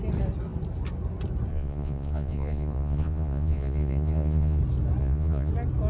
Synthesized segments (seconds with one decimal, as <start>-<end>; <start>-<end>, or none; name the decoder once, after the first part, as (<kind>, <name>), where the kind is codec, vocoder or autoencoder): 1.5-4.6 (vocoder, Vocos); 5.0-5.5